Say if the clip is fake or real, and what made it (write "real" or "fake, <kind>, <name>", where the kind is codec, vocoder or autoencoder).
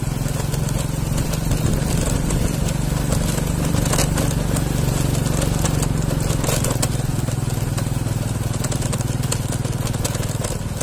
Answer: real